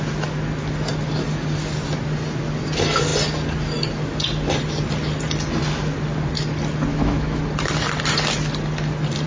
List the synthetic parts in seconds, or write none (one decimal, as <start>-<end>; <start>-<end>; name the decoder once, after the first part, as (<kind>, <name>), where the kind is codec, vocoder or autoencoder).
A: 6.9-7.4 (autoencoder, DAC-VAE)